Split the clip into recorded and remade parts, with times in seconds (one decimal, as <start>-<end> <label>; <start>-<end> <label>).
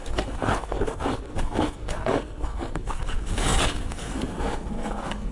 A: 0.0-5.3 remade